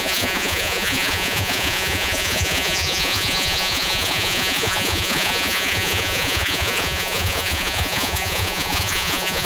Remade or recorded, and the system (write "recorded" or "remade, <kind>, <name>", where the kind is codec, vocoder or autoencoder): remade, vocoder, Vocos